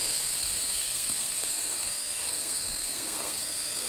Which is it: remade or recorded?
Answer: remade